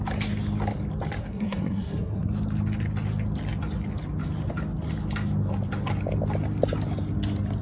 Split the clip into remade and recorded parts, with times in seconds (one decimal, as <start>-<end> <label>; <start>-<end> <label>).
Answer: 0.0-1.2 recorded; 1.2-2.3 remade; 2.3-7.6 recorded